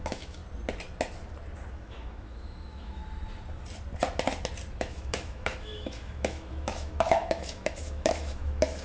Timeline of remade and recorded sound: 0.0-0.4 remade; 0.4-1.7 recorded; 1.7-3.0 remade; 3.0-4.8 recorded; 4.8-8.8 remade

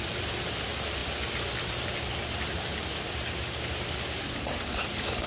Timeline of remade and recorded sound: 0.0-5.3 recorded

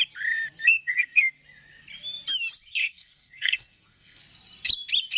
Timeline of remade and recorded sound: 0.0-0.6 recorded; 0.6-1.4 remade; 1.4-2.8 recorded; 2.8-4.2 remade; 4.2-5.2 recorded